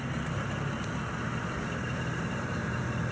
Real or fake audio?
real